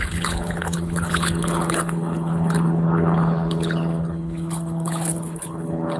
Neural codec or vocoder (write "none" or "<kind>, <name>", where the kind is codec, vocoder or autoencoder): codec, HILCodec